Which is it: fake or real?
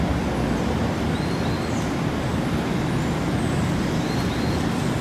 real